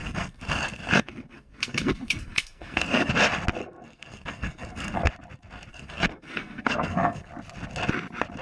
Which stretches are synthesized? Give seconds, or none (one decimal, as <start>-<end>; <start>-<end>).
0.0-3.1; 3.6-5.1; 5.7-7.3